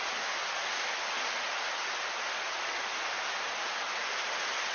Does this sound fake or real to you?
real